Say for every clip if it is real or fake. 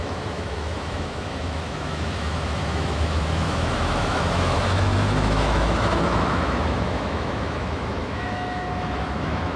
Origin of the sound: fake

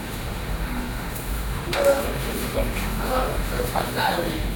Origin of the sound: fake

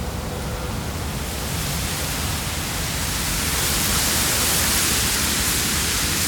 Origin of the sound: real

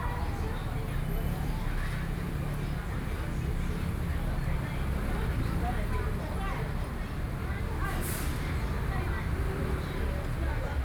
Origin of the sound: real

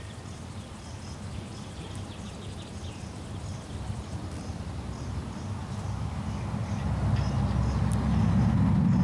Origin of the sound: real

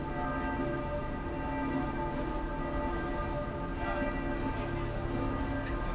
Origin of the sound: real